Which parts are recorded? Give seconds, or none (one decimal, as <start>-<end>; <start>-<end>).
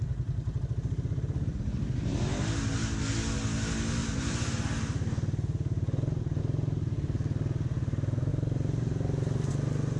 0.0-4.0; 6.4-8.3; 9.5-10.0